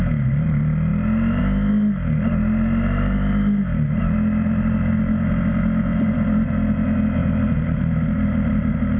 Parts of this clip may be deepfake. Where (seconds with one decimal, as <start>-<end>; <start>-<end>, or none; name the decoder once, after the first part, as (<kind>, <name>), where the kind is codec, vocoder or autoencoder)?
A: 5.9-6.4 (vocoder, BigVGAN v2); 7.2-8.5